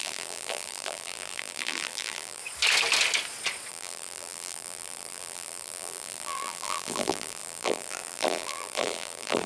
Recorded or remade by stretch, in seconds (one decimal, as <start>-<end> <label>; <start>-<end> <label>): 0.0-2.4 remade; 2.4-3.7 recorded; 3.7-9.5 remade